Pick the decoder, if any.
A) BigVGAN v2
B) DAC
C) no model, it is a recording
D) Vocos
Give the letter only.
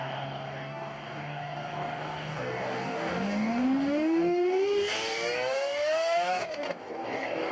B